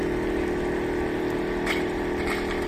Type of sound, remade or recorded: recorded